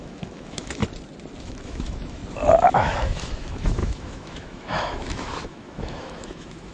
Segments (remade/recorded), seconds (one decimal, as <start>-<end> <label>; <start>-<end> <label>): 0.0-0.8 remade; 0.8-1.4 recorded; 1.4-2.2 remade; 2.2-2.7 recorded; 2.7-6.7 remade